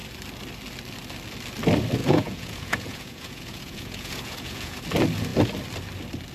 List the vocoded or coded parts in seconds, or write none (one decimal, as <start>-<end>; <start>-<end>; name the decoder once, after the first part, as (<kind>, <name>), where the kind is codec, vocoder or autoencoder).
2.0-4.8 (vocoder, Vocos)